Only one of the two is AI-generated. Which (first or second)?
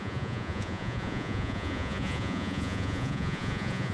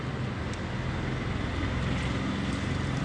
first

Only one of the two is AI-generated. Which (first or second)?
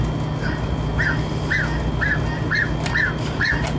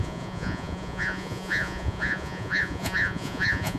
second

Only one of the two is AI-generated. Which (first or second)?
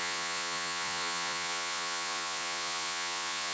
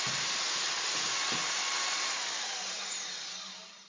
first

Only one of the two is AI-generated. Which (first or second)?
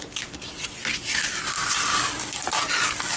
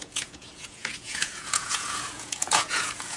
second